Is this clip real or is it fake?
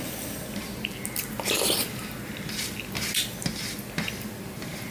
real